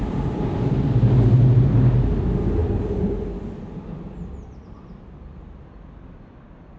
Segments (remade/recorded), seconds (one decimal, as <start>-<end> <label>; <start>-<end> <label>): 0.0-6.8 recorded

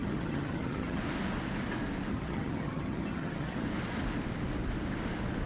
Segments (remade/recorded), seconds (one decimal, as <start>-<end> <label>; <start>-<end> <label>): 0.0-1.0 remade; 1.0-2.1 recorded; 2.1-3.6 remade; 3.6-5.5 recorded